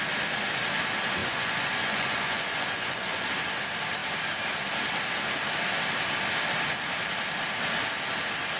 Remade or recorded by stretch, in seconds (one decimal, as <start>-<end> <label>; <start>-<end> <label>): 0.0-1.2 recorded; 1.2-3.3 remade; 3.3-8.6 recorded